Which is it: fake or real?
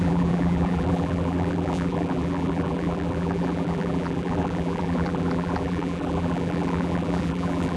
fake